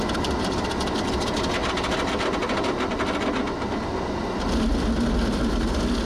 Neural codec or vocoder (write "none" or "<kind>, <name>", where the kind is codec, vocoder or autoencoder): none